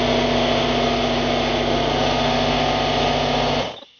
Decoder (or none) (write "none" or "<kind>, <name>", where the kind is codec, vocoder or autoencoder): none